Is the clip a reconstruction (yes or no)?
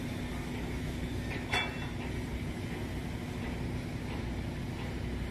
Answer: no